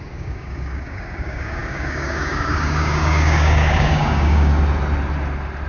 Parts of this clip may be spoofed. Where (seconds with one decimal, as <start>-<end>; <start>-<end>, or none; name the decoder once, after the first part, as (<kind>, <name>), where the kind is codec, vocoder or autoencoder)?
0.0-4.5 (codec, DAC)